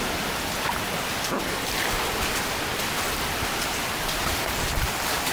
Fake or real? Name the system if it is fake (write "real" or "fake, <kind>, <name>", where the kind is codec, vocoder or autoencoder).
fake, vocoder, BigVGAN v2